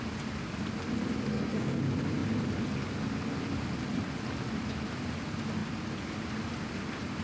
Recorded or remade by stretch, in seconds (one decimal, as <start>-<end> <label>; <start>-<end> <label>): 0.0-1.3 recorded; 1.3-1.8 remade; 1.8-7.2 recorded